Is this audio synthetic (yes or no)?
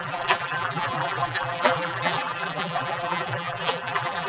yes